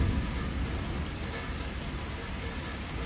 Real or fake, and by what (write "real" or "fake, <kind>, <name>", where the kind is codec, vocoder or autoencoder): real